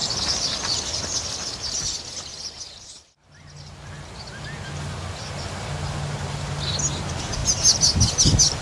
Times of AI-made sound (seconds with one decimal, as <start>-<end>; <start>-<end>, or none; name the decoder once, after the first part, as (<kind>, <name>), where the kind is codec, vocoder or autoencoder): none